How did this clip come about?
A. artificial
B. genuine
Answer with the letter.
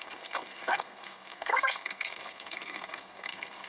A